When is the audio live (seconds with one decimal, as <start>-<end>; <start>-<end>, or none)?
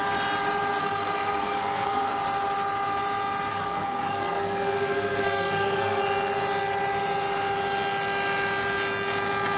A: 0.0-0.8; 2.1-3.5; 6.0-9.6